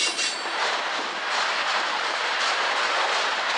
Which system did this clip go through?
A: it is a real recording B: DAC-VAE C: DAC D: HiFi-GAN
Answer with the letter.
A